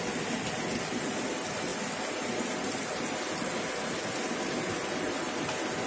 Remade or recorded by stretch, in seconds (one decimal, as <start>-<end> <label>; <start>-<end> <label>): 0.0-5.9 recorded